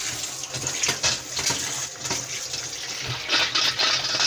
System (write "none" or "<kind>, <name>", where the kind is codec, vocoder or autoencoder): none